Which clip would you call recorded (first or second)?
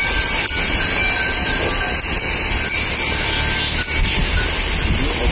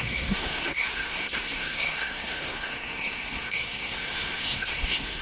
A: first